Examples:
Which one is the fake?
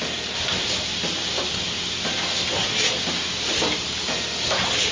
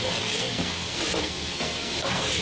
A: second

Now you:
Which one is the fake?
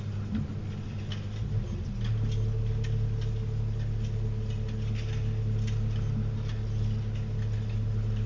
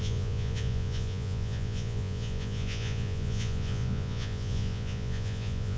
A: second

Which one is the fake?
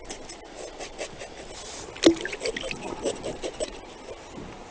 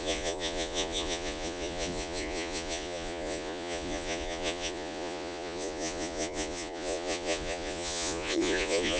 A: second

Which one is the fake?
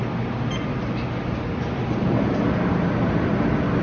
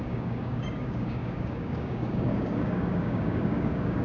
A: second